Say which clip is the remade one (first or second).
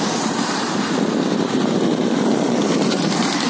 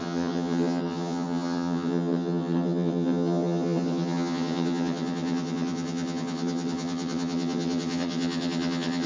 second